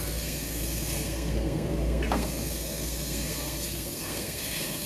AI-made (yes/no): yes